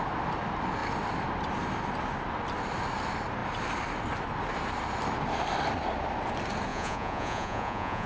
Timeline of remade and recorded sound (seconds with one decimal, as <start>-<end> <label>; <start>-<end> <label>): 0.0-6.7 recorded; 6.7-8.1 remade